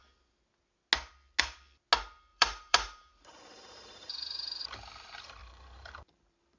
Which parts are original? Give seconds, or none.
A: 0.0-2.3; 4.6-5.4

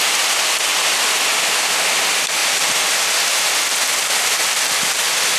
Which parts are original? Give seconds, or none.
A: 0.0-5.4

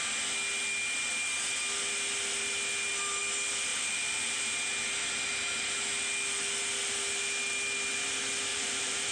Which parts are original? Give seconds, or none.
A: 0.0-3.7; 4.5-8.5

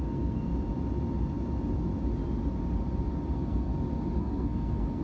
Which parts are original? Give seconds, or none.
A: 0.5-3.3; 3.7-4.2

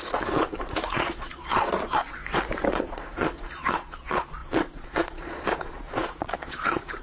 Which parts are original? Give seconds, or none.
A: 2.2-2.7